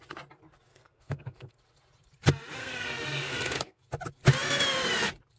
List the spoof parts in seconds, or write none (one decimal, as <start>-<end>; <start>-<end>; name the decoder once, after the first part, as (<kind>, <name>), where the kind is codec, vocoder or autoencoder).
0.7-1.5 (codec, SNAC); 2.6-3.8